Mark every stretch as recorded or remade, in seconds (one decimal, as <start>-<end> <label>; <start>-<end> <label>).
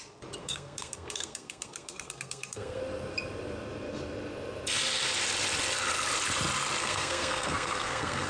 0.0-0.4 recorded; 0.4-2.8 remade; 2.8-6.8 recorded; 6.8-8.3 remade